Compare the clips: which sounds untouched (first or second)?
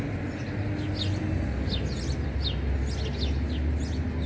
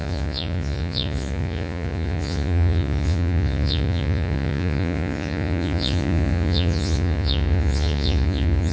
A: first